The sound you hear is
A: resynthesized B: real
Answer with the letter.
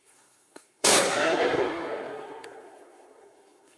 A